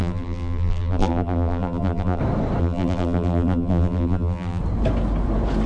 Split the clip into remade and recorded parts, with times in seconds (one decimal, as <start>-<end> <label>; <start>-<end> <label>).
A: 0.0-2.2 remade; 2.2-2.6 recorded; 2.6-4.6 remade; 4.6-5.7 recorded